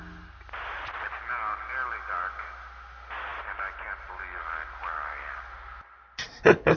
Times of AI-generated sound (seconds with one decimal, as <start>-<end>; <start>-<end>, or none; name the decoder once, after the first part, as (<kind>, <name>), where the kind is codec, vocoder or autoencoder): none

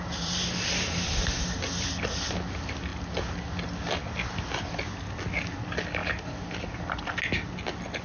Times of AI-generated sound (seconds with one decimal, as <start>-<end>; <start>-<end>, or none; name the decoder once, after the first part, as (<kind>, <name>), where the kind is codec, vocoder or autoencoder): 6.0-6.8 (vocoder, BigVGAN v2)

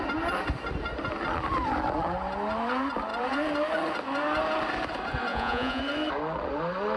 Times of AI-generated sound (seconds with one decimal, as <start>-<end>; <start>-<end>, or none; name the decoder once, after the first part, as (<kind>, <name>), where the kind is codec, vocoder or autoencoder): 5.3-5.8 (vocoder, Vocos)